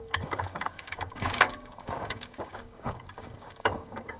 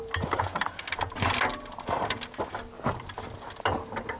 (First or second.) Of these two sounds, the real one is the second